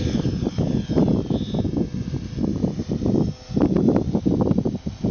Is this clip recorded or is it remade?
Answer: recorded